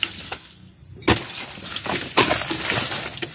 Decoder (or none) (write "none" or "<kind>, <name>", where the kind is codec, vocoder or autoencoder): none